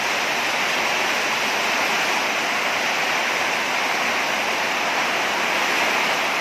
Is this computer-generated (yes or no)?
no